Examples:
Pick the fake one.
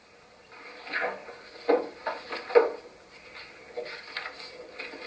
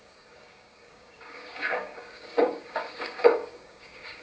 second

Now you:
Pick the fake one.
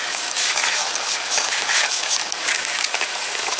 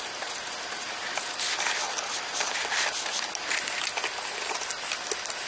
first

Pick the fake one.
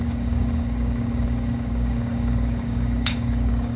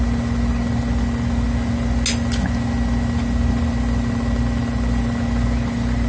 first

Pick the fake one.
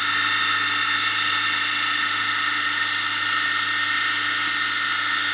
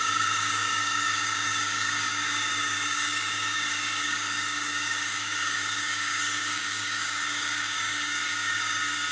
second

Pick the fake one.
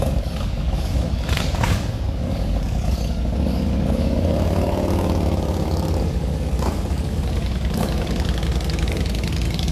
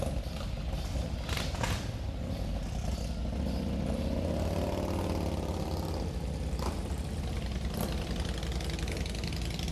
first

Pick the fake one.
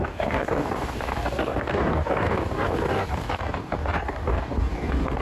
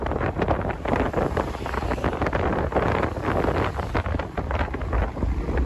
first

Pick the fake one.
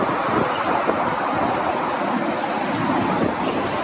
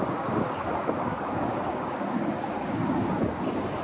second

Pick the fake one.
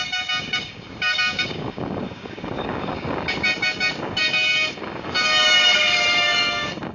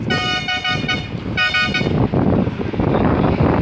first